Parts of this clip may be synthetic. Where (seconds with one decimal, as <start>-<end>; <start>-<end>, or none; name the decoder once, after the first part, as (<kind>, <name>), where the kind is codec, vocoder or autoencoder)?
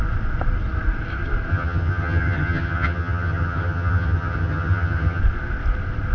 1.5-5.2 (vocoder, HiFi-GAN)